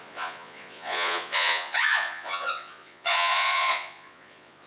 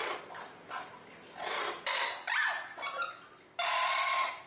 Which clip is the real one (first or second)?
second